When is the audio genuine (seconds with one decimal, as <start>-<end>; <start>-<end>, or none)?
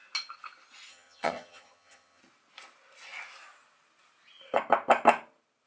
0.0-0.9; 2.2-5.7